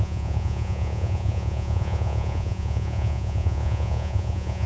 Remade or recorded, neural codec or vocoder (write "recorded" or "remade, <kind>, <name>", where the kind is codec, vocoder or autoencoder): remade, vocoder, Vocos